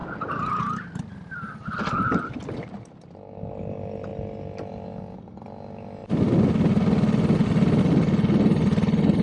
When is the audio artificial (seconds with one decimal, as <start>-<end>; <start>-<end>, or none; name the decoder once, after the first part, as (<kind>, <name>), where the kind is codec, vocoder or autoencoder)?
none